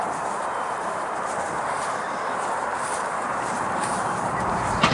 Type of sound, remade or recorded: remade